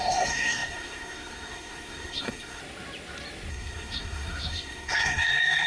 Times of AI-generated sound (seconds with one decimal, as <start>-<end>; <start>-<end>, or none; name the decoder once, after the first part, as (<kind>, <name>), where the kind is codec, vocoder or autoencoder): 0.0-2.6 (codec, SNAC); 3.5-5.7